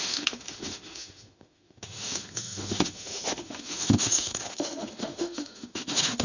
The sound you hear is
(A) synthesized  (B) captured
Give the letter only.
A